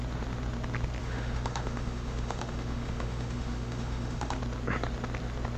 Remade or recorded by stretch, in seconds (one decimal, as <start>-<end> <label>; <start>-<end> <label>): 0.0-1.0 recorded; 1.0-4.4 remade; 4.4-5.6 recorded